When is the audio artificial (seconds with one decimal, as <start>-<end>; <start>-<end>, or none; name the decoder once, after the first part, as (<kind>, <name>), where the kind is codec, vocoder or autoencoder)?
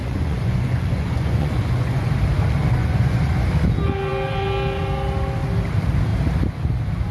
0.0-2.1 (vocoder, Vocos); 2.8-3.5